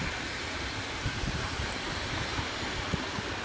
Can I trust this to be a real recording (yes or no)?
no